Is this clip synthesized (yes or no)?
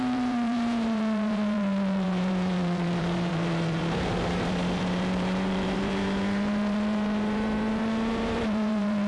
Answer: yes